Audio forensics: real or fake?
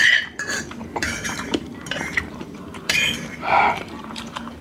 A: fake